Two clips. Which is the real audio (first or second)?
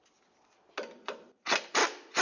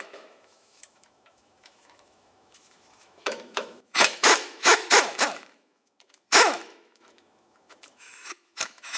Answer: first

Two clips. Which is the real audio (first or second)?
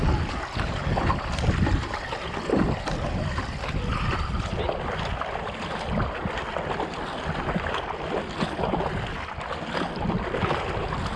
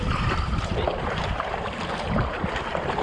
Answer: first